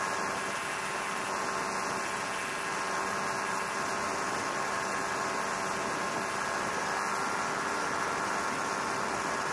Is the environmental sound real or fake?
real